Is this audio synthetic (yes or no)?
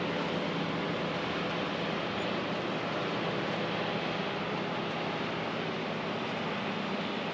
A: no